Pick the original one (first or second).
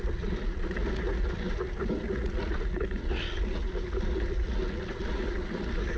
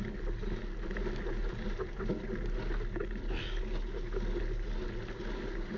second